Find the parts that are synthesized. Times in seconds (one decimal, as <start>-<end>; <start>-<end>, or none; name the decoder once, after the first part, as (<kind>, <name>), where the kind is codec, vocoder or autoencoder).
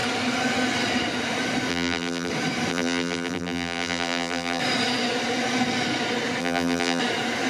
1.7-2.3 (vocoder, BigVGAN v2); 2.7-4.6; 6.4-7.0